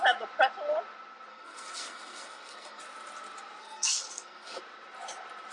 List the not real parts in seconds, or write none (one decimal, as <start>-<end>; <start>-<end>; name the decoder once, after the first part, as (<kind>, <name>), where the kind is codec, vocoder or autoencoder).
1.3-2.8 (codec, SNAC); 3.6-4.6